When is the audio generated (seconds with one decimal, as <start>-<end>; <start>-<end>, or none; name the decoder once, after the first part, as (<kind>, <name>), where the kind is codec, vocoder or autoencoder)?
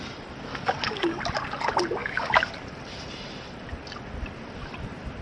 0.5-1.2 (codec, DAC); 2.0-2.5